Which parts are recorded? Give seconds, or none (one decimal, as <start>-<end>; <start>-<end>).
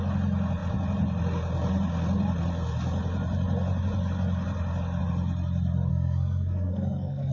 0.0-5.9